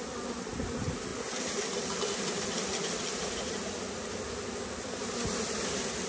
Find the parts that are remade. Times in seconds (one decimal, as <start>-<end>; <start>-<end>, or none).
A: none